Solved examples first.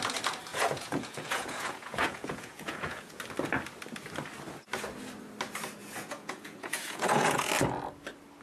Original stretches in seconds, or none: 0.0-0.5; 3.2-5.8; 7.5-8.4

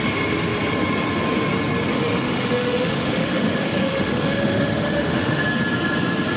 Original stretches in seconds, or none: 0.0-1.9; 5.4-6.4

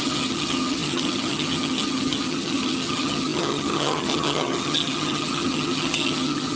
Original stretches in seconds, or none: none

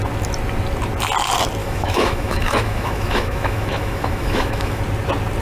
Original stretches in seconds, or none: 0.0-1.6; 4.8-5.4

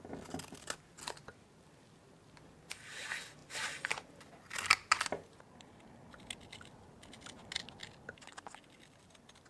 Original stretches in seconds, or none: 0.0-9.5

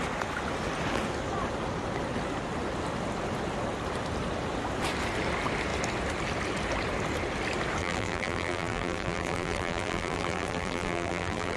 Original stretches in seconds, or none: 0.0-7.8

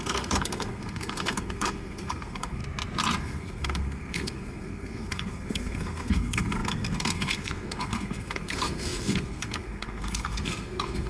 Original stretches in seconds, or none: 2.6-3.2